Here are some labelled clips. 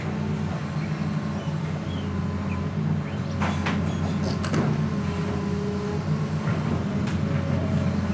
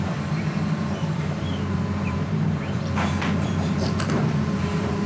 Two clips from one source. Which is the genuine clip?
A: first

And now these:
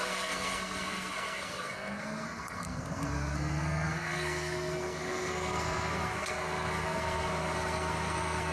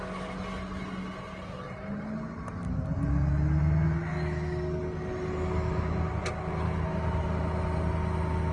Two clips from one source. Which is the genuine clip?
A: second